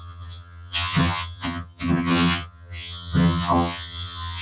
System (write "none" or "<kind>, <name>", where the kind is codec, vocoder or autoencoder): vocoder, HiFi-GAN